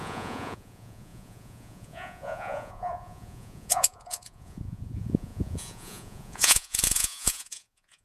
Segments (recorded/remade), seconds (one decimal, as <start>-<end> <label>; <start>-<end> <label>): 0.0-8.0 remade